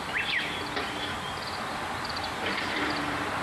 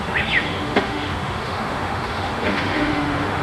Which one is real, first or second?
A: first